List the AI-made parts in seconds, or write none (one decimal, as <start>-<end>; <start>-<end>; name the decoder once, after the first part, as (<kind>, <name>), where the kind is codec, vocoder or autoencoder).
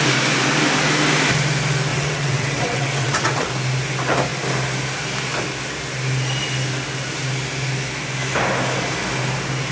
1.9-3.5 (vocoder, WaveNeXt)